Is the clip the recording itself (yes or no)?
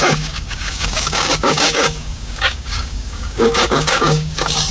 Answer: no